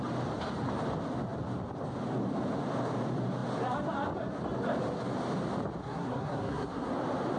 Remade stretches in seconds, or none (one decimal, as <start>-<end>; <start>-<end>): 5.8-6.9